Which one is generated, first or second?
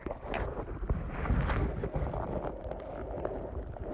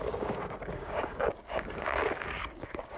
second